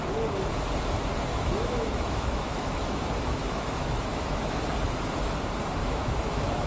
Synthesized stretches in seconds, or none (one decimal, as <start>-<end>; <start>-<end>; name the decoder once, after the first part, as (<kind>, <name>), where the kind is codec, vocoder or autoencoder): 1.3-4.5 (autoencoder, DAC-VAE); 5.8-6.7